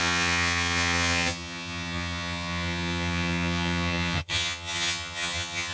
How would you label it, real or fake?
fake